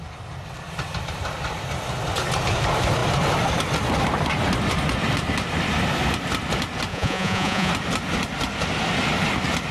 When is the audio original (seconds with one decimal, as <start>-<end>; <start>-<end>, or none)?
0.0-6.9; 7.7-9.7